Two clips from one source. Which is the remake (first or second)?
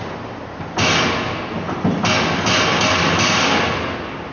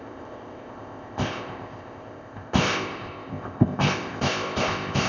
second